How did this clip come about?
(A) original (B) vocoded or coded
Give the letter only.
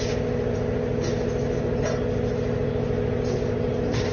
A